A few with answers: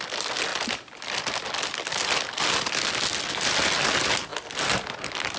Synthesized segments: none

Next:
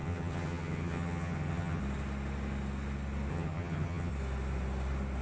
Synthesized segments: 0.0-1.8 (vocoder, HiFi-GAN); 3.3-4.1

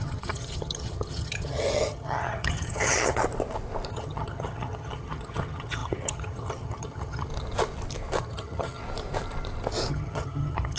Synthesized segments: 0.0-3.2 (vocoder, HiFi-GAN); 3.9-7.3; 8.2-8.8; 9.9-10.8

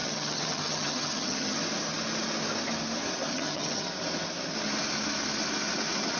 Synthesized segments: 0.0-1.6 (vocoder, HiFi-GAN); 3.3-3.9